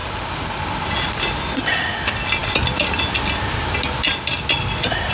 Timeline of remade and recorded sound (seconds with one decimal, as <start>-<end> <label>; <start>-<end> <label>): 0.0-5.1 recorded